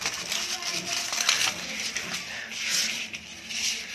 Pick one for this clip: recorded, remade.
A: recorded